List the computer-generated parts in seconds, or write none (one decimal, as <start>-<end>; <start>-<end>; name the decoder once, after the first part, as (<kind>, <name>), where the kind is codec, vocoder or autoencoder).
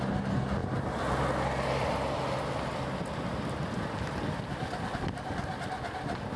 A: none